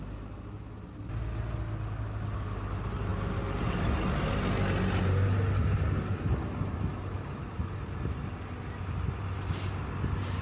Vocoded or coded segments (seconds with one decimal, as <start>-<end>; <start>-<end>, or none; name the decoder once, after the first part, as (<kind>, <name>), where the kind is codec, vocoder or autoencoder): none